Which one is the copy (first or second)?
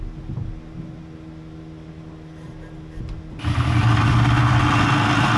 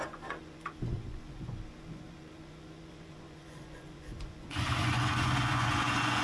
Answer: second